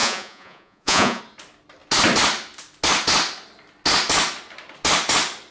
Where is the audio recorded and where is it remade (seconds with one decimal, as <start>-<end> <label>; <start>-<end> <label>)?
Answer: 0.0-1.2 remade; 1.2-5.5 recorded